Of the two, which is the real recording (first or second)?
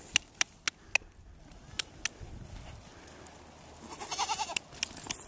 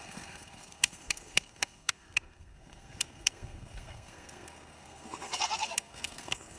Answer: first